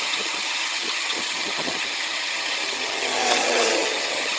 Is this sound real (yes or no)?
no